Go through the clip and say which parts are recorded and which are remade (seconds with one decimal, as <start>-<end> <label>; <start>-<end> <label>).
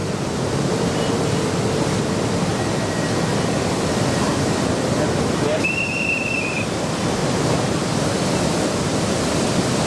0.0-2.1 recorded; 2.1-2.5 remade; 2.5-3.5 recorded; 3.5-7.2 remade; 7.2-7.8 recorded; 7.8-9.9 remade